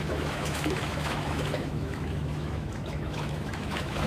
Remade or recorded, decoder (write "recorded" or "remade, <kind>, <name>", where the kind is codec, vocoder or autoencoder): remade, autoencoder, DAC-VAE